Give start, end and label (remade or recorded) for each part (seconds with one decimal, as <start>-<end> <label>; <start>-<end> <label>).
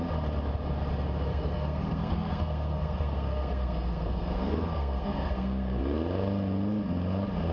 0.0-1.3 recorded; 1.3-5.8 remade; 5.8-7.5 recorded